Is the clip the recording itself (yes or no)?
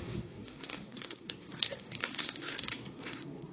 no